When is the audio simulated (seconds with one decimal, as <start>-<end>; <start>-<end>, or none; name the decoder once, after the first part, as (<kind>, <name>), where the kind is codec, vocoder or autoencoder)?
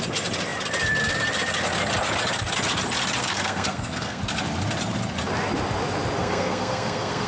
3.2-4.2 (codec, SNAC); 6.2-7.3